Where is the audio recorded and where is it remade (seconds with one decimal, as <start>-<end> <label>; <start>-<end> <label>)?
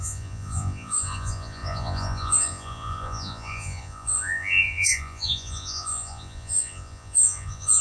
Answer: 0.0-7.8 remade